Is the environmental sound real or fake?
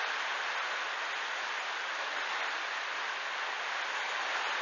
real